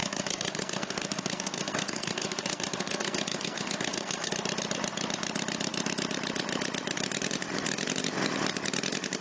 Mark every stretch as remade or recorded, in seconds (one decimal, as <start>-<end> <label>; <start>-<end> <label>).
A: 0.0-4.3 remade; 4.3-9.2 recorded